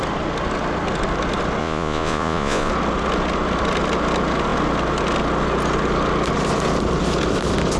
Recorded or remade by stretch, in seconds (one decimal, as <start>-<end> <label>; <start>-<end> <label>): 0.0-1.6 recorded; 1.6-2.7 remade; 2.7-7.8 recorded